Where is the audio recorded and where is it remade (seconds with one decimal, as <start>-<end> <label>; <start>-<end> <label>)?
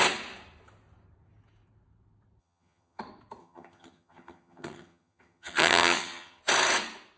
0.0-2.4 recorded; 2.4-3.0 remade; 3.0-3.4 recorded; 3.4-6.4 remade; 6.4-7.2 recorded